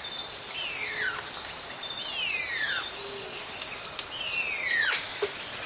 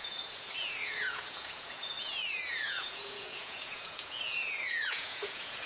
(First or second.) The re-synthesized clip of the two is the second